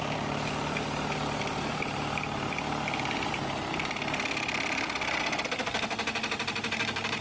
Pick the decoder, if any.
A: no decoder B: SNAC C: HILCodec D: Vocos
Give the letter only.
A